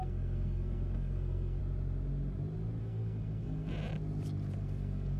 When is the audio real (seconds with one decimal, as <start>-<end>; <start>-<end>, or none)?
1.6-2.8; 3.7-4.6